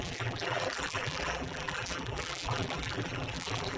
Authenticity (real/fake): fake